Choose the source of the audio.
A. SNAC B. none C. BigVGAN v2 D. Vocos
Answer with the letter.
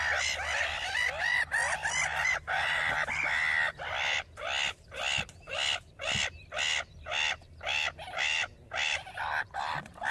B